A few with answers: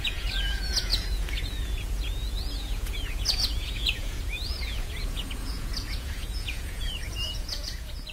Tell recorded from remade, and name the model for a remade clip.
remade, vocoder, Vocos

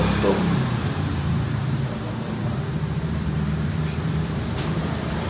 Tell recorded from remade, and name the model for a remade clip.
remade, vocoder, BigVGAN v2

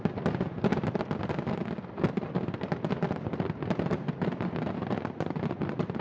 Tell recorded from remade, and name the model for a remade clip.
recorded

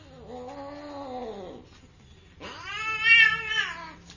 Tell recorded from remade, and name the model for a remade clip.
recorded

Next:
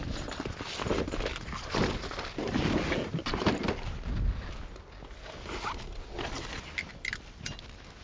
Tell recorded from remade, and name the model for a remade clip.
recorded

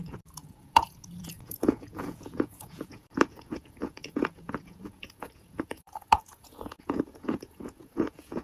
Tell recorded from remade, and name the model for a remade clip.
remade, vocoder, Vocos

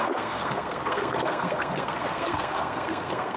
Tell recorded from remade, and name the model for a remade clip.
remade, codec, SNAC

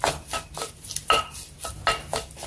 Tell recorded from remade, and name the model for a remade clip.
recorded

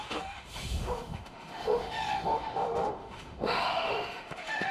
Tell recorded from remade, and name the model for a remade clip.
remade, autoencoder, DAC-VAE